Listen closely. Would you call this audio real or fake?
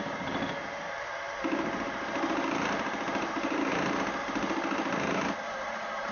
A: real